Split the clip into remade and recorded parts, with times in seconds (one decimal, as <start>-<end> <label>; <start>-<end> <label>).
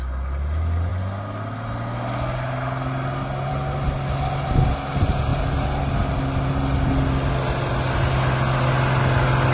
0.0-9.5 recorded